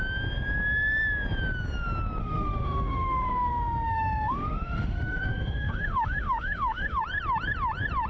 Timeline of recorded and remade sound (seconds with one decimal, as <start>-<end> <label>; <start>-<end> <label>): 0.0-2.2 recorded; 2.2-7.0 remade; 7.0-8.1 recorded